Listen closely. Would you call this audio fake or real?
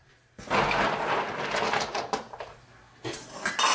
real